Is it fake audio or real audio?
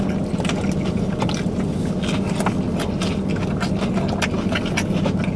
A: real